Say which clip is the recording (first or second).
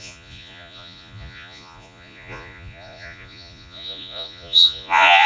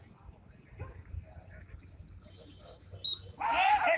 second